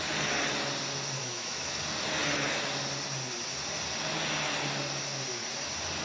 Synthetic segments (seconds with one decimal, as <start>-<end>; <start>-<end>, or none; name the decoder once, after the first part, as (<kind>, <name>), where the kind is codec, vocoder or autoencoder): 1.2-1.8 (autoencoder, DAC-VAE)